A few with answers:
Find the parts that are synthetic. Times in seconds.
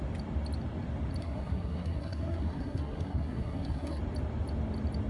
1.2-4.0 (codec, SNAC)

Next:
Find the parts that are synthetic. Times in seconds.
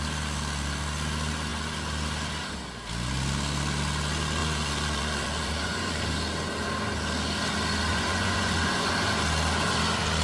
4.4-6.0 (vocoder, Vocos); 7.9-8.9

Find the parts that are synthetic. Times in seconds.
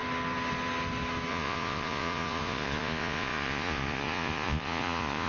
1.3-5.3 (vocoder, Vocos)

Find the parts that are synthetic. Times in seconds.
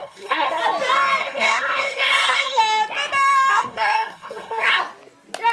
0.0-0.6 (codec, SNAC); 1.2-2.6; 3.5-4.8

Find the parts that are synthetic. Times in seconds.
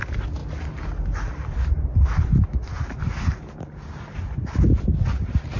none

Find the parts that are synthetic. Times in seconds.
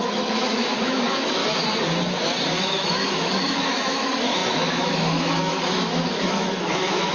0.0-1.4 (autoencoder, DAC-VAE); 2.6-7.1